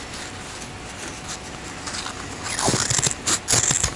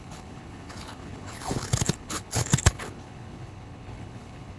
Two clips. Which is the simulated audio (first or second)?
second